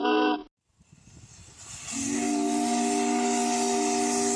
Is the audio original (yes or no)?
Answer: yes